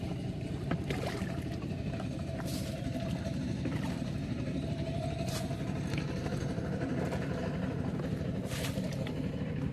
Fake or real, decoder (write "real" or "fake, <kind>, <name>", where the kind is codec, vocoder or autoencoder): fake, vocoder, BigVGAN v2